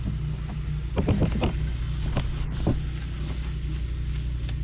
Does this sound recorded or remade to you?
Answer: recorded